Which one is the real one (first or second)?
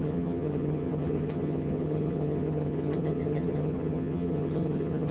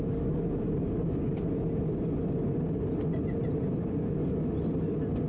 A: second